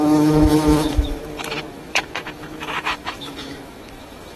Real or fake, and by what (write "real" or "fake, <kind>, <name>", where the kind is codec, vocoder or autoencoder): fake, autoencoder, DAC-VAE